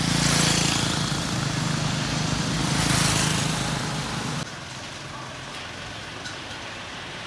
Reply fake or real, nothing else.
real